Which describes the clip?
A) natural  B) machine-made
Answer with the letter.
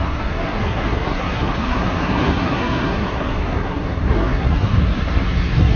B